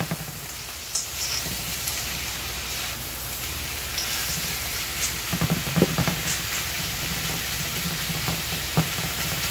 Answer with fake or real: fake